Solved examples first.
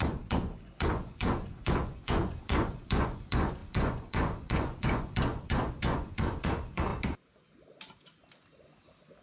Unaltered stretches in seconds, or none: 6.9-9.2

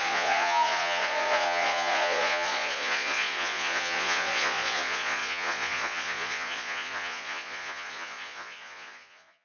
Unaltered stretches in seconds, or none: none